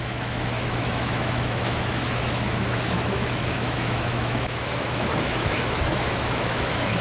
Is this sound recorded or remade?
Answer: remade